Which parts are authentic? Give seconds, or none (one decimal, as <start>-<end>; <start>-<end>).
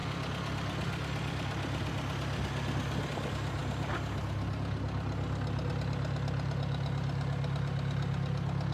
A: 0.0-8.7